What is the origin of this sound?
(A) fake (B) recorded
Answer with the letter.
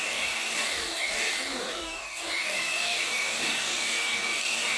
A